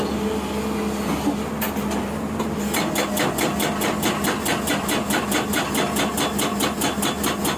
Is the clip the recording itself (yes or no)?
yes